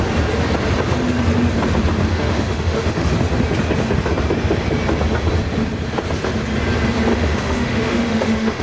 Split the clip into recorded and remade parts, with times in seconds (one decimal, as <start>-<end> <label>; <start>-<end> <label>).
0.0-2.1 recorded; 2.1-3.1 remade; 3.1-7.1 recorded; 7.1-8.6 remade